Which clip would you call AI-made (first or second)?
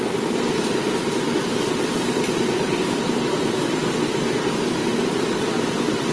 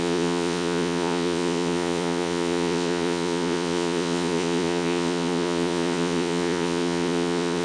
second